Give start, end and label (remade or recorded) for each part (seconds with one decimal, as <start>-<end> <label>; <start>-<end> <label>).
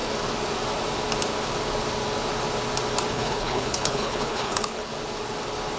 0.0-3.1 recorded; 3.1-4.9 remade; 4.9-5.8 recorded